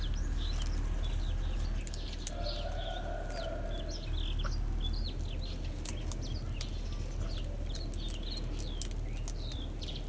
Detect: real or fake real